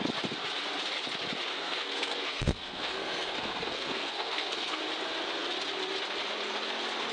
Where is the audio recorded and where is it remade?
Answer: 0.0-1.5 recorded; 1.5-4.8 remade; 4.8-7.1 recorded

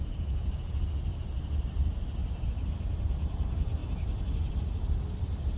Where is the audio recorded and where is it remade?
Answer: 0.0-0.8 remade; 0.8-5.6 recorded

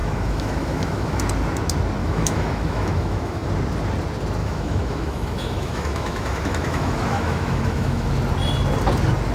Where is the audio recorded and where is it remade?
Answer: 0.0-1.2 remade; 1.2-2.0 recorded; 2.0-3.5 remade; 3.5-4.4 recorded; 4.4-8.1 remade; 8.1-9.3 recorded

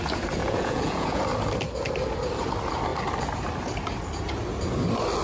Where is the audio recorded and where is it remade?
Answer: 0.0-0.4 recorded; 0.4-1.2 remade; 1.2-5.2 recorded

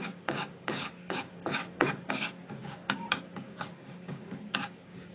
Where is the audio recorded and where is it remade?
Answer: 0.0-5.1 remade